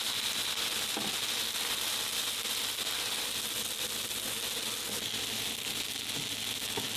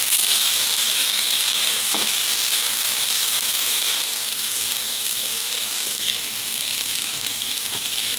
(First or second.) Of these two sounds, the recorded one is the first